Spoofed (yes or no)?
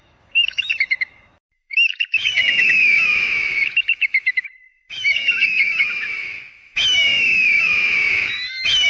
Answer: yes